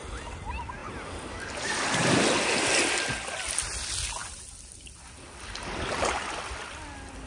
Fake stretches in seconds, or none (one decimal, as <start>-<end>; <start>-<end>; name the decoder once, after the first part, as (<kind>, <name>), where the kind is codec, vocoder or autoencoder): none